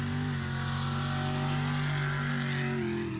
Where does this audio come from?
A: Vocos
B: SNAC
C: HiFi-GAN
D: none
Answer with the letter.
D